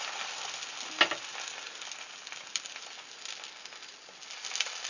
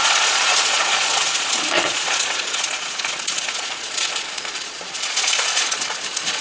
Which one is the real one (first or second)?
first